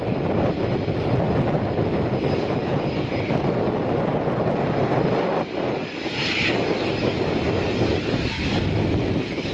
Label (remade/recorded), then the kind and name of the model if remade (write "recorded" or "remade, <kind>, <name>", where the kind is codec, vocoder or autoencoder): recorded